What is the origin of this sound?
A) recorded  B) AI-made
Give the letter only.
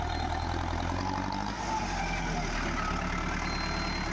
A